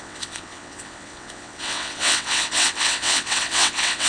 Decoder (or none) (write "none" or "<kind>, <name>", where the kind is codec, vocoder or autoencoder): vocoder, WaveNeXt